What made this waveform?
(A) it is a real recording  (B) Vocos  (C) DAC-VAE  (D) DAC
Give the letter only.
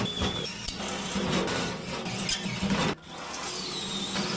A